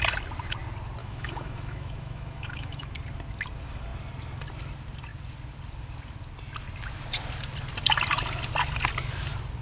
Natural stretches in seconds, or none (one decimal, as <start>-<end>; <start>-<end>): 0.0-1.0; 3.0-9.6